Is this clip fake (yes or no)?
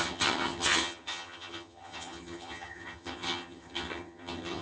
yes